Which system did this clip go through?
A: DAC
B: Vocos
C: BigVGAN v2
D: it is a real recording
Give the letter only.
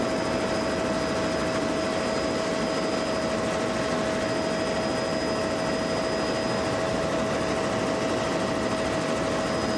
D